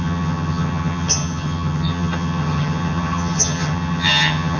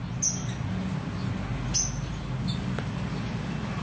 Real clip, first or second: second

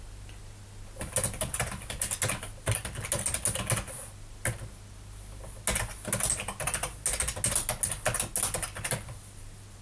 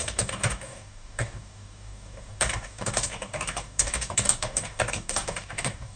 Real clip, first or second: first